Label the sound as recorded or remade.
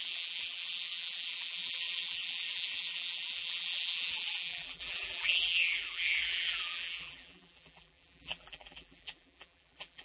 remade